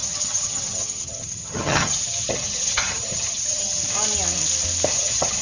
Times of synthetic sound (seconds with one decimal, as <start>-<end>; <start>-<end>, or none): 0.0-3.8; 4.9-5.4